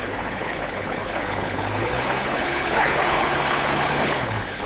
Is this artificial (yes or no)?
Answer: yes